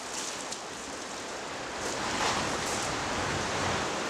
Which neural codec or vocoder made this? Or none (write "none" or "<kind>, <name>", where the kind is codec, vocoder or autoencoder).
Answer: none